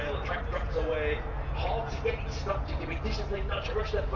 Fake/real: real